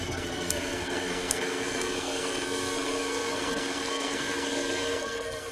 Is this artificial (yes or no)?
yes